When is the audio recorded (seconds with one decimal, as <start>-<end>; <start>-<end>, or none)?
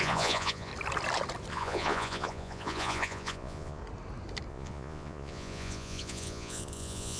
0.7-1.5; 3.8-4.5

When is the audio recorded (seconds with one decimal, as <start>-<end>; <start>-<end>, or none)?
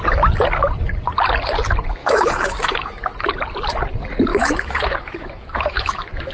0.0-2.0; 3.1-4.3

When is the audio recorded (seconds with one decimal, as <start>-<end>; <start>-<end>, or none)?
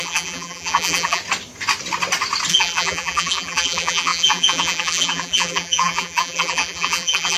1.2-2.5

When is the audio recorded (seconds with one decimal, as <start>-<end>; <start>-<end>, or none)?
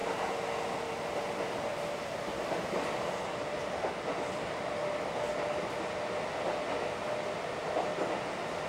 0.0-8.7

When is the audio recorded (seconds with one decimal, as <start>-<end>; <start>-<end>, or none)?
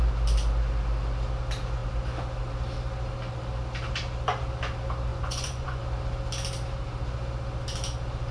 0.0-5.1; 5.8-8.3